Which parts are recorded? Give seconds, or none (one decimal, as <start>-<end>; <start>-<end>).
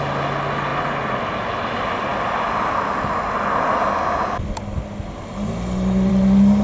0.0-6.6